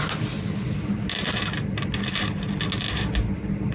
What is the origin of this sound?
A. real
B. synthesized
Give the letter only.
A